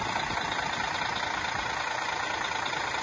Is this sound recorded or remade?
recorded